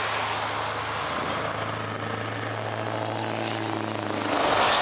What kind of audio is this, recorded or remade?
recorded